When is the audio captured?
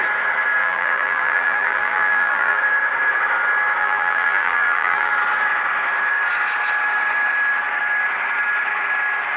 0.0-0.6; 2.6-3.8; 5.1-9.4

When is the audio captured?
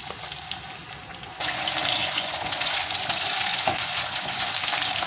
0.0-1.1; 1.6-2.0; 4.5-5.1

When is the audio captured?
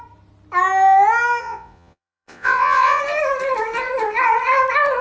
0.0-1.4; 3.0-5.0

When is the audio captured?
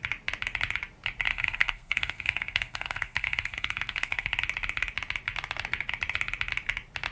0.0-1.3; 4.3-7.1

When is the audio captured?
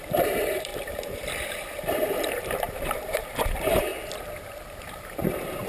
3.9-4.9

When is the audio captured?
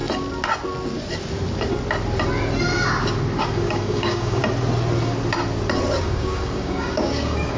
0.0-3.4; 4.4-6.0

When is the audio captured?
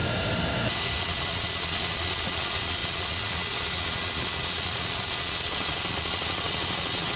0.0-1.0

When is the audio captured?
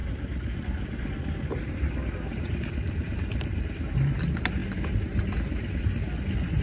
3.9-6.6